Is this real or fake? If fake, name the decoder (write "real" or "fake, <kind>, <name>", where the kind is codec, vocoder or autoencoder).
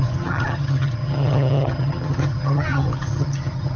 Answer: fake, vocoder, HiFi-GAN